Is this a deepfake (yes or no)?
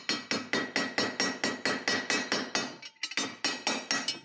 no